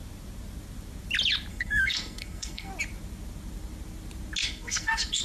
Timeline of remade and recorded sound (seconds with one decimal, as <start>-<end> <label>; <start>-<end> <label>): 0.0-1.5 recorded; 1.5-2.7 remade; 2.7-4.4 recorded; 4.4-5.2 remade